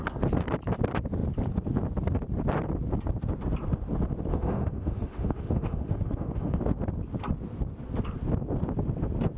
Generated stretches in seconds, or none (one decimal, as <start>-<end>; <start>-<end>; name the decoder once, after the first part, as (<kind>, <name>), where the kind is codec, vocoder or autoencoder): 4.3-6.6 (autoencoder, DAC-VAE)